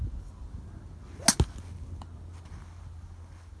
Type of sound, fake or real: real